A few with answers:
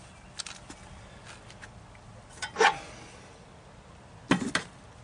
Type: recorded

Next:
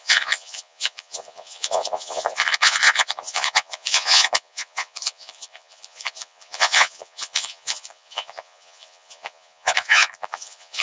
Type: remade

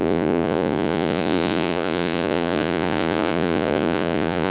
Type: remade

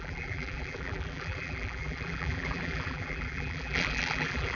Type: remade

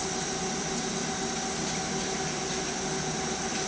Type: remade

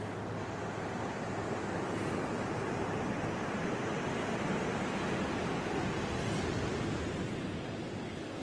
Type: recorded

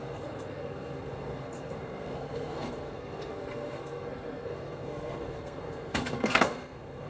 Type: remade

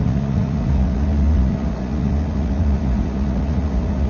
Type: remade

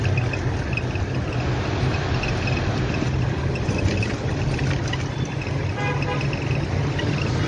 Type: recorded